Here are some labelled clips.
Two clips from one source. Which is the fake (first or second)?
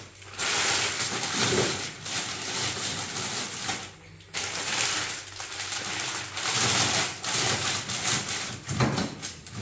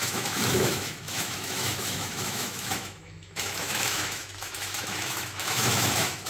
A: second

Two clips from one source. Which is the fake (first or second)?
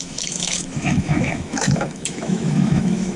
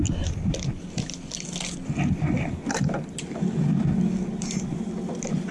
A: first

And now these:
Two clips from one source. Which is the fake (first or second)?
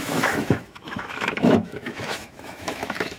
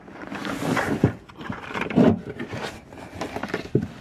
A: first